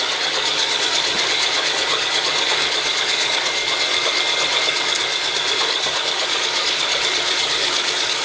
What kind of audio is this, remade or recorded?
remade